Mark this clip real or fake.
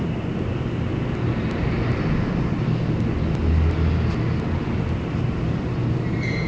real